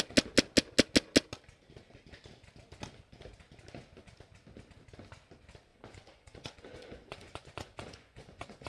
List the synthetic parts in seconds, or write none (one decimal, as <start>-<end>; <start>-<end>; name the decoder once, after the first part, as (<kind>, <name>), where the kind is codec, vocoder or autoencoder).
5.7-8.7 (vocoder, Vocos)